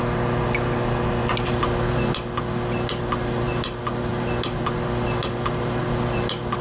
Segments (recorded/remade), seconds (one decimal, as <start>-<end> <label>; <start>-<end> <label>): 0.0-6.6 recorded